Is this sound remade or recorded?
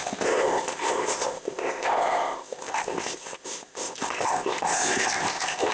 remade